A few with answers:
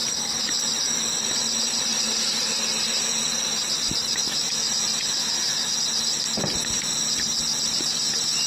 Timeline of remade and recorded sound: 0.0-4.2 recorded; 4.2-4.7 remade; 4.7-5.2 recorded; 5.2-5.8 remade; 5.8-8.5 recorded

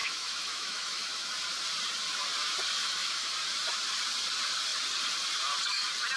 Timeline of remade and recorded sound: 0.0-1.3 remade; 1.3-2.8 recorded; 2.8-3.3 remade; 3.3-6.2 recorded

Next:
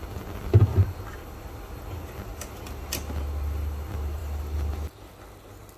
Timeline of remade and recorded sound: 0.0-5.8 recorded

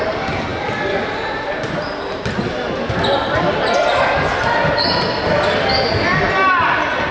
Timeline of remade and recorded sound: 0.0-7.1 recorded